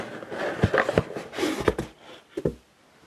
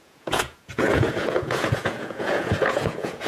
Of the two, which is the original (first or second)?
first